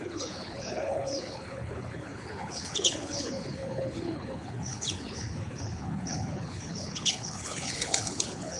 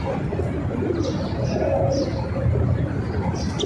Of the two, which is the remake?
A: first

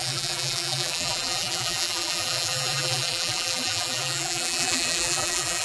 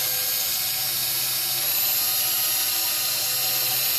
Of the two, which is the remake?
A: first